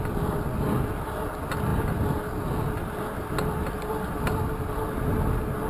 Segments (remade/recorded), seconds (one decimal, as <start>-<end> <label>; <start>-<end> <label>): 0.0-5.7 recorded